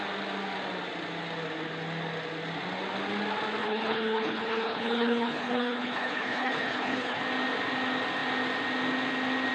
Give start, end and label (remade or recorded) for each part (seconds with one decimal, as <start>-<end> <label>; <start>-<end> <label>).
0.0-3.6 recorded; 3.6-7.2 remade; 7.2-9.5 recorded